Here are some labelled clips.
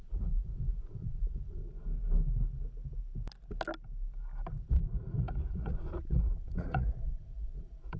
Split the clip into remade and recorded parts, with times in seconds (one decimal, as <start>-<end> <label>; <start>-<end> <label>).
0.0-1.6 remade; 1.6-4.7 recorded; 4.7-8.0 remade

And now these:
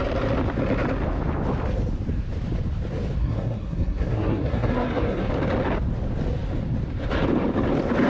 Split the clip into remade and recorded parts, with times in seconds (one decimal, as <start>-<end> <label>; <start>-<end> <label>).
0.0-3.2 recorded; 3.2-5.3 remade; 5.3-8.1 recorded

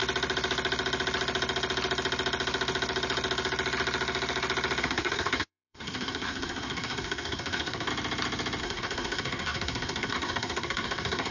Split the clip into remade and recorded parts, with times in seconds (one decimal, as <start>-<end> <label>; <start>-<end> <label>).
0.0-4.8 recorded; 4.8-7.9 remade; 7.9-8.6 recorded; 8.6-11.3 remade

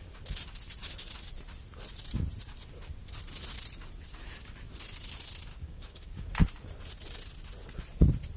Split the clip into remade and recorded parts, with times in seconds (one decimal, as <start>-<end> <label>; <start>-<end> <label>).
0.0-5.5 recorded; 5.5-6.3 remade; 6.3-8.4 recorded

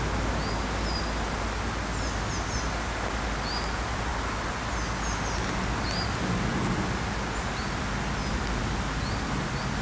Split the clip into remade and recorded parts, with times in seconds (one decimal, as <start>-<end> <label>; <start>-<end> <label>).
0.0-9.8 recorded